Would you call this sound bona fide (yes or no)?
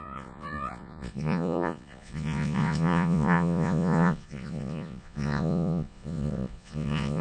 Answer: no